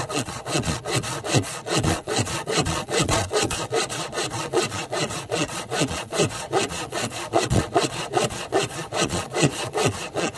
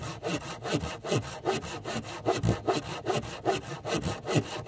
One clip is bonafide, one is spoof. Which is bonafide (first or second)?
second